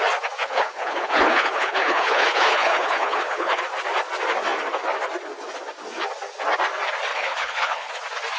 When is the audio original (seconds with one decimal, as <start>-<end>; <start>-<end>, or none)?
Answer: 0.0-0.4; 3.6-7.1; 7.9-8.4